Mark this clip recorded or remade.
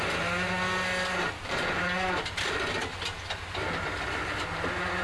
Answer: recorded